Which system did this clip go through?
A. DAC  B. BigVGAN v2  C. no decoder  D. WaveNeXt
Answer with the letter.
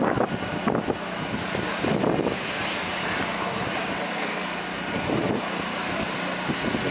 C